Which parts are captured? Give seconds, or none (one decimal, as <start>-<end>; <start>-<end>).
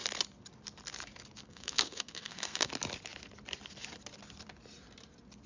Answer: 0.0-1.4; 2.7-5.5